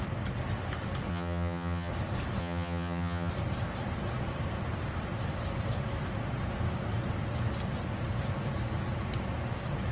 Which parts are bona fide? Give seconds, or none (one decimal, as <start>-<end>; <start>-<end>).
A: 0.0-1.1; 1.9-2.4; 3.3-9.9